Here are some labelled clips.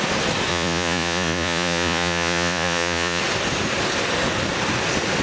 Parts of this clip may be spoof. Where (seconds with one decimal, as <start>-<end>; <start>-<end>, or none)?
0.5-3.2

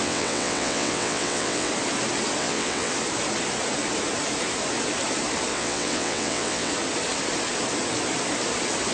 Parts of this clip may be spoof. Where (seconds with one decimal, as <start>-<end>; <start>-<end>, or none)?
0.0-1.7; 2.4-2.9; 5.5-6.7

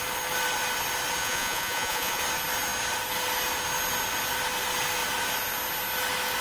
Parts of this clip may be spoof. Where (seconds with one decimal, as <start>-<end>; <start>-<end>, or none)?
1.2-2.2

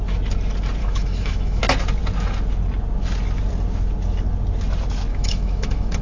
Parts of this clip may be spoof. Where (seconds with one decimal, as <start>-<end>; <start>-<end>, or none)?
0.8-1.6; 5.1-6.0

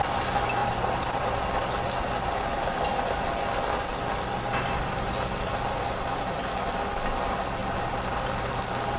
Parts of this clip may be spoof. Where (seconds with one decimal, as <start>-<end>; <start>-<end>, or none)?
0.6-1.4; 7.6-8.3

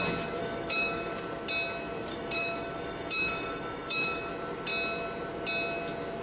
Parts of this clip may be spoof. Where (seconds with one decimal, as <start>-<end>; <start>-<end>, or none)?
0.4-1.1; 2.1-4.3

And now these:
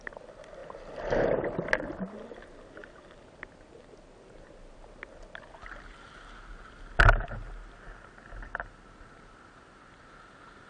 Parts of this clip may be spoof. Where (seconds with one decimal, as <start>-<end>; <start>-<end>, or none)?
none

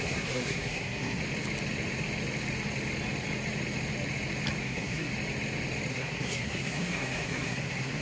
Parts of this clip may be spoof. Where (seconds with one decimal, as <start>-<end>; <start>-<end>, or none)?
0.0-1.2; 4.6-5.1; 5.9-8.0